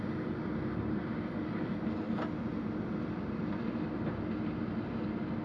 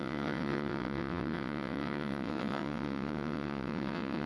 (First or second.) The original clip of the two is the first